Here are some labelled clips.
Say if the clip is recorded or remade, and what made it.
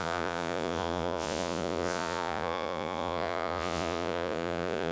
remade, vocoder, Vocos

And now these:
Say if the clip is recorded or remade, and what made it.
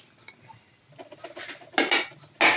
recorded